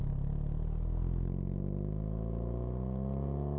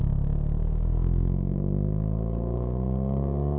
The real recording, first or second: first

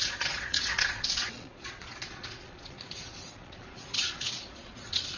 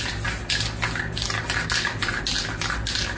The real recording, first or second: second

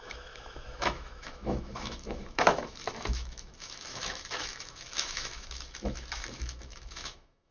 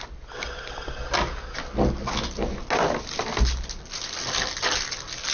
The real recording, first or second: second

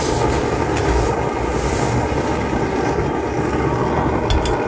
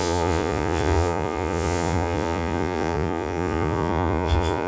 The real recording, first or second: first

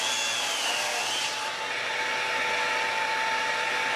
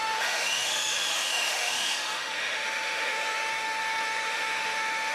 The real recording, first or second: first